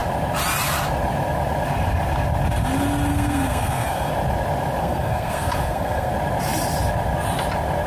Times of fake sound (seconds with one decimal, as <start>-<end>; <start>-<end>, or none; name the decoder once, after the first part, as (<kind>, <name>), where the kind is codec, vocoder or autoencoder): 3.1-4.1 (codec, SNAC); 4.8-6.1